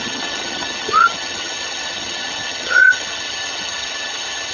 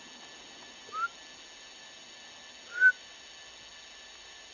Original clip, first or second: second